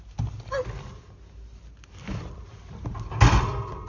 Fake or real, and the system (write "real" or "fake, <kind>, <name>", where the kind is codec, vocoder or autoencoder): real